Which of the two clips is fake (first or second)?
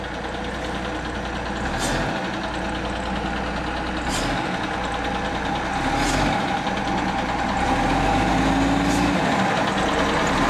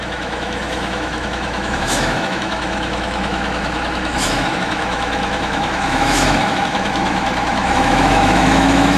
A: second